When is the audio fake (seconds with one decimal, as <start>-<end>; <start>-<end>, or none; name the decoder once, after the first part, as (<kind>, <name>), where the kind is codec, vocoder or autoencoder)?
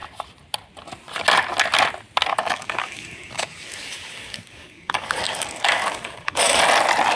2.3-6.6 (codec, DAC)